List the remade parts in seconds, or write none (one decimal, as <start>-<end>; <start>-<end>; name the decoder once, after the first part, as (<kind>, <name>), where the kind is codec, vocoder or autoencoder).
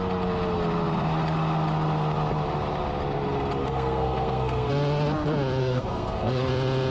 3.6-4.7 (codec, SNAC); 5.6-6.5